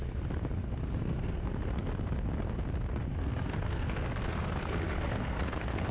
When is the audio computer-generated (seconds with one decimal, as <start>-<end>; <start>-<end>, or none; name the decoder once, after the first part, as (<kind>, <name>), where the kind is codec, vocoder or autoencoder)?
0.6-1.5 (codec, SNAC); 3.1-5.4